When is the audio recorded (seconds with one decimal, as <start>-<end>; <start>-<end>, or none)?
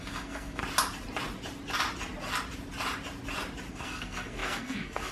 0.6-3.7